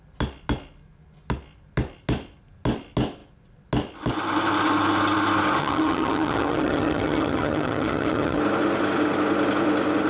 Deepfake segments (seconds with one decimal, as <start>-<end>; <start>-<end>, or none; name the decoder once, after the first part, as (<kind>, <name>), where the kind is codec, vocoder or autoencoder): 5.6-8.4 (vocoder, HiFi-GAN)